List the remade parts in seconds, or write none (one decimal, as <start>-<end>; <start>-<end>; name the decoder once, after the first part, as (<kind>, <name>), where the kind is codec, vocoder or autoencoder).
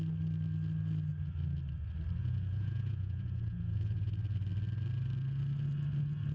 2.2-4.1 (vocoder, Vocos)